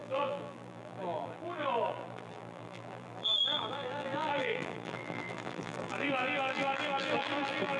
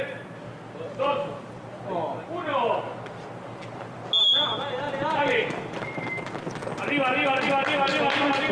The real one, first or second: second